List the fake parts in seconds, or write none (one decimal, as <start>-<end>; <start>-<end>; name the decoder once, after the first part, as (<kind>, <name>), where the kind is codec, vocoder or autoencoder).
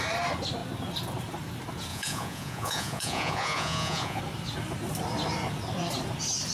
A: 1.9-4.2 (vocoder, Vocos)